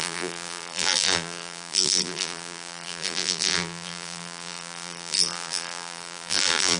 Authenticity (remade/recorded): remade